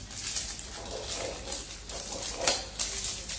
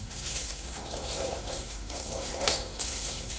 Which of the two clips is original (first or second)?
first